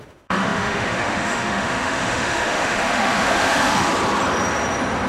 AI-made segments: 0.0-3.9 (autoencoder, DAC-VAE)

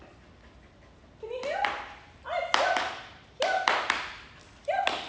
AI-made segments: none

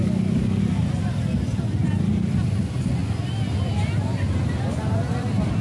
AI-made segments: 0.0-0.6 (codec, DAC)